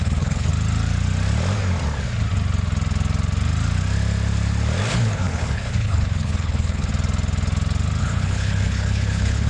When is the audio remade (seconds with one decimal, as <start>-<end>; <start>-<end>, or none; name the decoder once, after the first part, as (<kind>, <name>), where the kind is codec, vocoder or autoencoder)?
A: 0.0-0.5 (codec, HILCodec); 4.9-6.9; 8.0-9.5